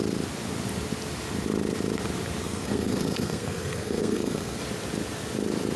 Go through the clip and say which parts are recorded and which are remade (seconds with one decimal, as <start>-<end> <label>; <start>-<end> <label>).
0.0-2.4 recorded; 2.4-4.6 remade; 4.6-5.8 recorded